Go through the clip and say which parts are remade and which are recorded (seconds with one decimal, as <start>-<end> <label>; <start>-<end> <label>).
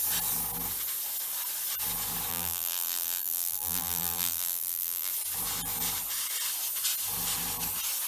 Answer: 0.0-2.3 recorded; 2.3-5.1 remade; 5.1-8.1 recorded